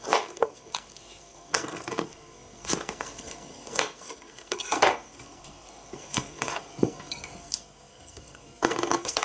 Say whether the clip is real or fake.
fake